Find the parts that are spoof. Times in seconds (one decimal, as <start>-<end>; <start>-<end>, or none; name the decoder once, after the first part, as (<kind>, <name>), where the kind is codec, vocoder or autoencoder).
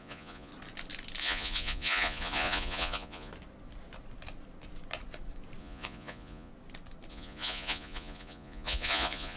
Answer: 0.0-0.5 (vocoder, Vocos); 1.2-3.3; 5.6-6.5; 7.1-9.4